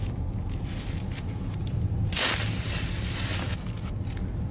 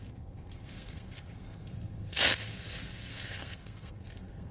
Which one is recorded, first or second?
first